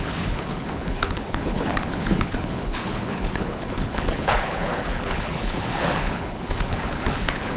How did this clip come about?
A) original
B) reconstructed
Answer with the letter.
B